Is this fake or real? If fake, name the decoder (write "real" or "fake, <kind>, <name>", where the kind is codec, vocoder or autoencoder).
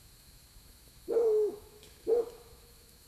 fake, autoencoder, DAC-VAE